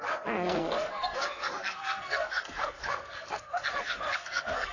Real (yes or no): no